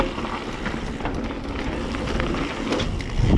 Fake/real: real